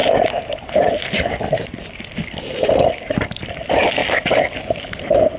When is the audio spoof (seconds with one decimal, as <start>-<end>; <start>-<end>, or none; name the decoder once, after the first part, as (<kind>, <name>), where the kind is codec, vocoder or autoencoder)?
1.2-5.4 (vocoder, BigVGAN v2)